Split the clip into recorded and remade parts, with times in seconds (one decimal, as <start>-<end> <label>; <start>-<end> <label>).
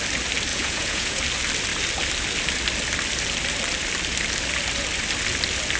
0.0-0.5 recorded; 0.5-1.2 remade; 1.2-5.8 recorded